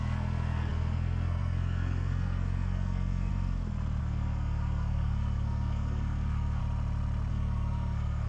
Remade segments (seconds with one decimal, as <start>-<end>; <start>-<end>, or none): 0.0-3.3; 4.0-6.6; 7.3-8.3